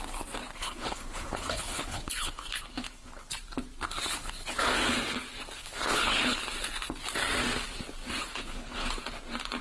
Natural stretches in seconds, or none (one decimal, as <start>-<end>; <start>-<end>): 0.0-0.4; 3.3-4.1; 4.7-5.6; 6.4-8.2; 8.9-9.6